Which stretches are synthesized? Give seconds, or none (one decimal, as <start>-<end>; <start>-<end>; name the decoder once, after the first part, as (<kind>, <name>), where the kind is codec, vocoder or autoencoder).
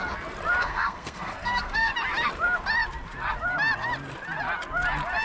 0.6-1.9 (codec, SNAC)